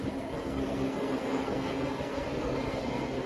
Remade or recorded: remade